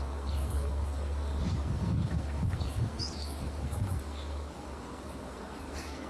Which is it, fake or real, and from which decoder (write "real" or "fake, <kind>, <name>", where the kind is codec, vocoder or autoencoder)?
fake, codec, SNAC